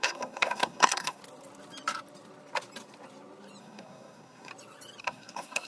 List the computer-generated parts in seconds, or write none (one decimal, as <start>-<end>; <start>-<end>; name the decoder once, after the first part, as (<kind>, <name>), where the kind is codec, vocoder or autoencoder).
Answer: 0.0-1.2 (codec, SNAC); 3.6-4.5; 5.0-5.7